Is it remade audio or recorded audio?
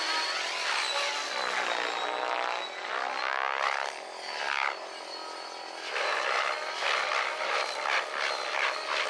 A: recorded